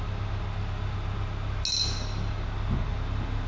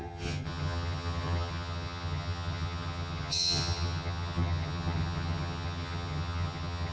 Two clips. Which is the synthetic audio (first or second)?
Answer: second